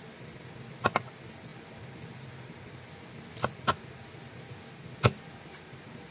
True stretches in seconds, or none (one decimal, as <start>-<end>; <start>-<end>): 0.0-6.1